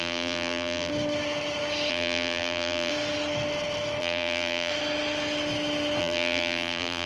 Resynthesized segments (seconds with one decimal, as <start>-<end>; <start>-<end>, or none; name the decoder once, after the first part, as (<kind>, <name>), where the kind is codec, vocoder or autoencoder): 0.0-0.9 (vocoder, BigVGAN v2); 1.9-2.9; 4.0-4.7; 6.0-7.1